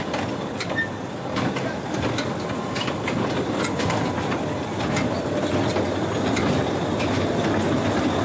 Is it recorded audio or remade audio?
recorded